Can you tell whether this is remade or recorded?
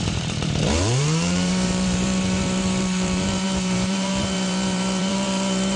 remade